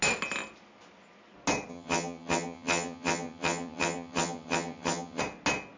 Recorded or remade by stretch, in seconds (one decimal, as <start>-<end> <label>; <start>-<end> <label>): 0.0-1.7 recorded; 1.7-5.2 remade; 5.2-5.8 recorded